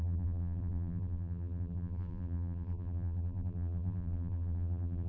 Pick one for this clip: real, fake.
fake